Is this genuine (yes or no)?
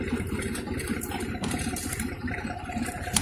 no